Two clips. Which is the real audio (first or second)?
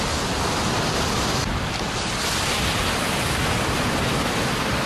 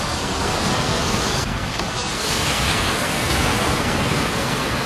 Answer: first